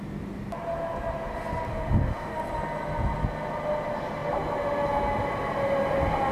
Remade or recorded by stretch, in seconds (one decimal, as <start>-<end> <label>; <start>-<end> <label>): 0.0-1.7 recorded; 1.7-2.4 remade; 2.4-6.3 recorded